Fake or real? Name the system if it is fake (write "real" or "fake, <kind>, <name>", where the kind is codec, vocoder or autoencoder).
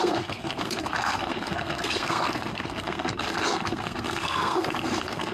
fake, codec, SNAC